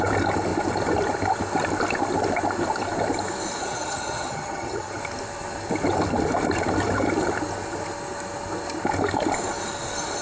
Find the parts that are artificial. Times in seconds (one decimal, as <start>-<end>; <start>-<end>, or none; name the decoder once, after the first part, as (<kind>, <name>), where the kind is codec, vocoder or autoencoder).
3.6-5.0 (vocoder, HiFi-GAN)